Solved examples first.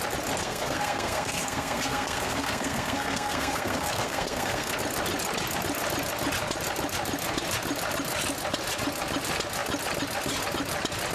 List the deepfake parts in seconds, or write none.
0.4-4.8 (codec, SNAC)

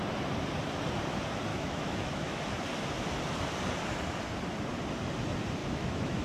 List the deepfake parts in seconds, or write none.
1.5-2.4 (autoencoder, DAC-VAE); 5.6-6.2

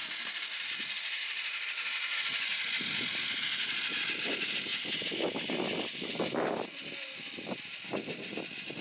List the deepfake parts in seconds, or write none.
none

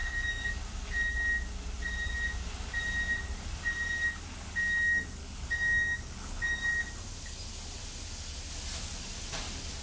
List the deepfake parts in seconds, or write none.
0.0-0.6 (codec, DAC); 5.2-6.6